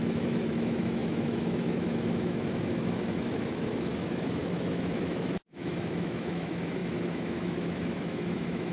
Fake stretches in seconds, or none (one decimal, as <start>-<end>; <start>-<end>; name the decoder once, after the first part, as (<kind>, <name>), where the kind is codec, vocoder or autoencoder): 0.0-8.7 (autoencoder, DAC-VAE)